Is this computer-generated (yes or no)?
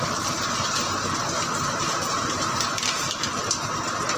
no